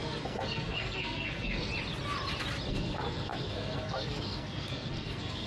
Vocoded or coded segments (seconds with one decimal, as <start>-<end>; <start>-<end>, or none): 0.0-1.7; 2.7-5.5